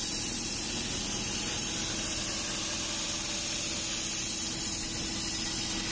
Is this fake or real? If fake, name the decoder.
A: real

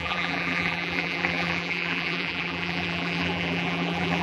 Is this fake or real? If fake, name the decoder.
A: fake, vocoder, BigVGAN v2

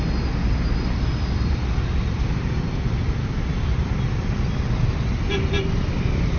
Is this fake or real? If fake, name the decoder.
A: real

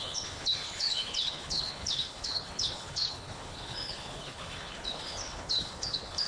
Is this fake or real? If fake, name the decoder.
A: fake, codec, HILCodec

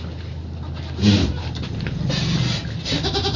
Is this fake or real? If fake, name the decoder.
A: real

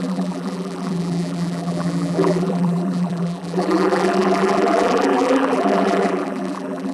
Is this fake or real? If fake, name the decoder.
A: fake, vocoder, BigVGAN v2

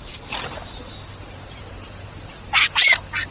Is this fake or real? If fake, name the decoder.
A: real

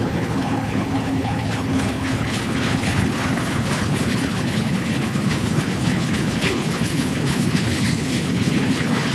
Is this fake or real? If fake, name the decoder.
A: fake, codec, HILCodec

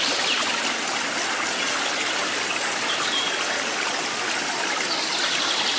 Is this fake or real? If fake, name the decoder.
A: real